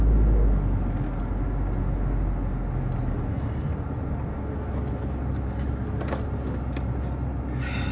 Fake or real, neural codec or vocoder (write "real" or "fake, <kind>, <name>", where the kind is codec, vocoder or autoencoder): real